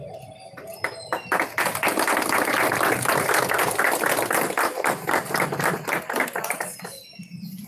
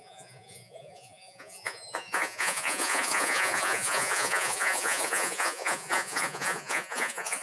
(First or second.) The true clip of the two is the first